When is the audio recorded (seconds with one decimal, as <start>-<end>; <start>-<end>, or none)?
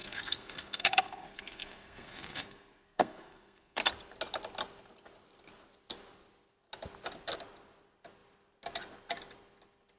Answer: 3.8-10.0